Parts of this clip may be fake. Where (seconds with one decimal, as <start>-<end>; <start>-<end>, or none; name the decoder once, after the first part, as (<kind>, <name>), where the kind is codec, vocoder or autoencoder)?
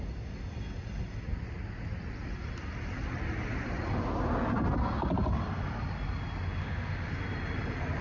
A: 6.6-7.1 (autoencoder, DAC-VAE)